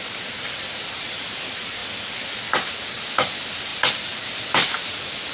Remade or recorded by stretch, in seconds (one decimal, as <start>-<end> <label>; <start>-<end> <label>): 0.0-5.3 recorded